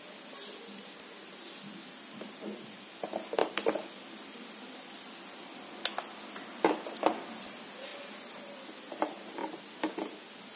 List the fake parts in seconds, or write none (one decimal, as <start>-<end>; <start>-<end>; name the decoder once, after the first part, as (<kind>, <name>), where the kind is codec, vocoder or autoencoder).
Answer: none